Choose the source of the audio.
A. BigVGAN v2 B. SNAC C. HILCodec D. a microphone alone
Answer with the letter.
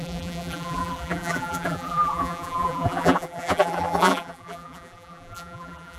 A